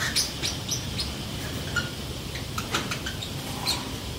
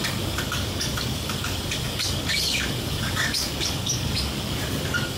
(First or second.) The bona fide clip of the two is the first